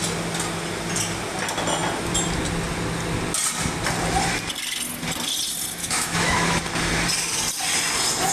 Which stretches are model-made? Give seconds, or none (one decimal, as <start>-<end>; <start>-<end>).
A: 5.8-6.6